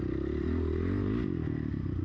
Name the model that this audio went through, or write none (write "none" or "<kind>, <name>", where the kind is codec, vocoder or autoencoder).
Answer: none